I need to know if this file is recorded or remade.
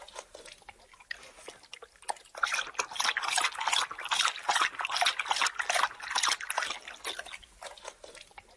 recorded